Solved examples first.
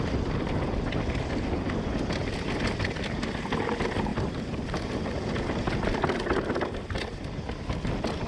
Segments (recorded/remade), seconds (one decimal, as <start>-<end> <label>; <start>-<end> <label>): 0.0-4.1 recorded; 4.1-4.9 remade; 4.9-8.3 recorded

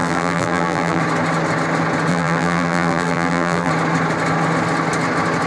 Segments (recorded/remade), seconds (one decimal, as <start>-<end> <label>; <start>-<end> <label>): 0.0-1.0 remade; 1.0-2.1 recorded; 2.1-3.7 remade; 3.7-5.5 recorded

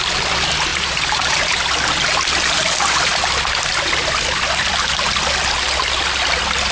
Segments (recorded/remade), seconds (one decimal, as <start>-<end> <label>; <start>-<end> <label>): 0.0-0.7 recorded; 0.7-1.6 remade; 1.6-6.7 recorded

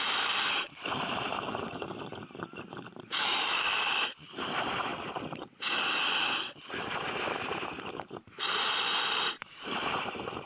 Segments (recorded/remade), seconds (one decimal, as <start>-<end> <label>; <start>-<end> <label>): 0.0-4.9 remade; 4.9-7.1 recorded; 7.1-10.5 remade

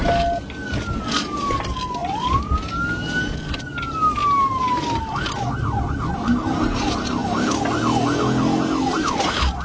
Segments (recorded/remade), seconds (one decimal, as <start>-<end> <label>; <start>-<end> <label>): 0.0-2.0 recorded; 2.0-2.6 remade; 2.6-7.2 recorded; 7.2-7.8 remade; 7.8-9.6 recorded

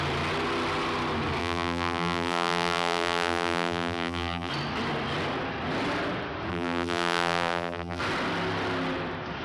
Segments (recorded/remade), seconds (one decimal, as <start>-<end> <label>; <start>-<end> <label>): 0.0-1.4 recorded; 1.4-4.5 remade; 4.5-6.5 recorded; 6.5-8.0 remade; 8.0-9.4 recorded